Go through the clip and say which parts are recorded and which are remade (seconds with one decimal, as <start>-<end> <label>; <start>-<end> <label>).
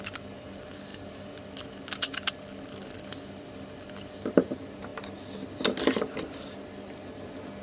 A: 0.0-7.6 recorded